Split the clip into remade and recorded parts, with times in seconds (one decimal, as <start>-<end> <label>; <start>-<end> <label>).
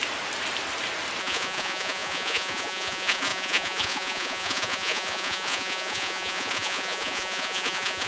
0.0-1.2 recorded; 1.2-8.1 remade